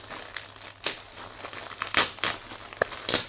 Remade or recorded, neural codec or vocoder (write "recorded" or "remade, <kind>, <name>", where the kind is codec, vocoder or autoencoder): recorded